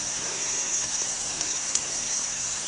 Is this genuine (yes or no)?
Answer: no